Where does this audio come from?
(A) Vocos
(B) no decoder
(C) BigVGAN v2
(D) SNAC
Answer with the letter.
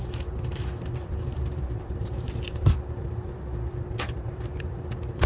C